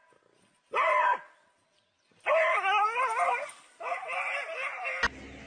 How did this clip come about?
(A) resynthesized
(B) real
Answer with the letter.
B